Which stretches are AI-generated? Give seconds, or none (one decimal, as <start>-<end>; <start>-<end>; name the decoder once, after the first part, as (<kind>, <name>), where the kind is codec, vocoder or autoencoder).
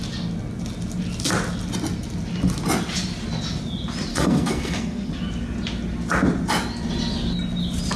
4.1-5.1 (codec, SNAC)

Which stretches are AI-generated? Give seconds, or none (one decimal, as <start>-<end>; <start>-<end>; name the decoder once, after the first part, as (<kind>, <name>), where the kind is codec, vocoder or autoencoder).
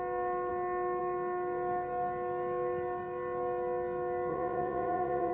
4.3-5.3 (vocoder, Vocos)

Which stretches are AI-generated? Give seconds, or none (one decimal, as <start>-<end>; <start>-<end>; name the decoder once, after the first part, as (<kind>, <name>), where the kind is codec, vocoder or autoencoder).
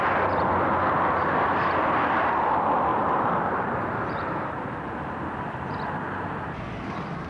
2.9-5.0 (vocoder, BigVGAN v2)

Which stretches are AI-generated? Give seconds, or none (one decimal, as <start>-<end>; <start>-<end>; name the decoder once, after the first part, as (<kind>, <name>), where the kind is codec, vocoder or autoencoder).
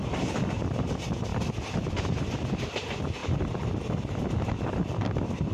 1.3-1.9 (vocoder, BigVGAN v2)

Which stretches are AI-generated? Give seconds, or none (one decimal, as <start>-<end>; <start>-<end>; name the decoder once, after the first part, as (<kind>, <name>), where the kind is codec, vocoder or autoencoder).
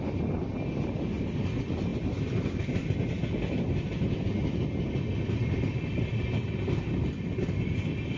1.9-2.7 (vocoder, BigVGAN v2)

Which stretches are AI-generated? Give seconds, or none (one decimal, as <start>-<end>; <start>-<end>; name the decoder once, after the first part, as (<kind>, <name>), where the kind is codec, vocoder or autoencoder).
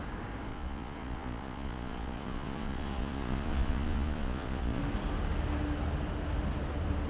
0.5-4.8 (vocoder, Vocos)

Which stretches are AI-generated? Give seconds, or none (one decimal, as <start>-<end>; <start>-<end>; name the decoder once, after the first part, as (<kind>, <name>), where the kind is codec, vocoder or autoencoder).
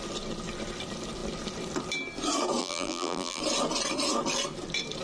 2.6-3.4 (vocoder, BigVGAN v2)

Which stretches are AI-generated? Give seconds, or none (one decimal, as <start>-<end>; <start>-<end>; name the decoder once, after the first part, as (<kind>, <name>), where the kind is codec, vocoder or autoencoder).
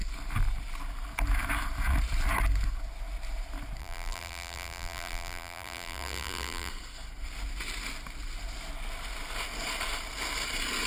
3.8-6.7 (vocoder, BigVGAN v2)